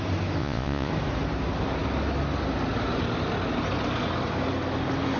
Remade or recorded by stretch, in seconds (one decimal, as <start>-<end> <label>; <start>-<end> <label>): 0.0-0.4 recorded; 0.4-0.9 remade; 0.9-5.2 recorded

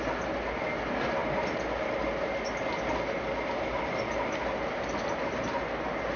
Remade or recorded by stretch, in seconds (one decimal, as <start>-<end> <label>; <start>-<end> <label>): 0.0-6.2 recorded